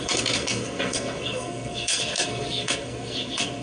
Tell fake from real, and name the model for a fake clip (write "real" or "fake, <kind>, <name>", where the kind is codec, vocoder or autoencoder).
fake, codec, SNAC